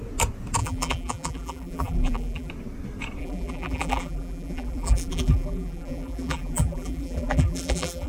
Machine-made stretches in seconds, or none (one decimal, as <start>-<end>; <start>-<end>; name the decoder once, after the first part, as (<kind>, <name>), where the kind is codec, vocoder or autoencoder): 0.6-2.5 (vocoder, BigVGAN v2); 3.2-8.1